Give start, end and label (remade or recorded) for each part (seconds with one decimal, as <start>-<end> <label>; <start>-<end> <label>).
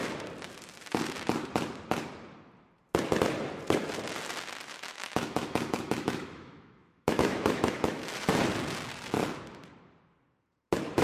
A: 0.0-4.7 recorded; 4.7-8.1 remade; 8.1-11.0 recorded